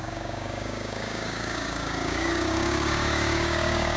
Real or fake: fake